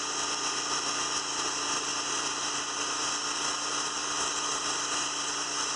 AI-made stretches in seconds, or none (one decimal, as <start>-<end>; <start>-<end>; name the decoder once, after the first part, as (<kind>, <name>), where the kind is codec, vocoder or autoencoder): none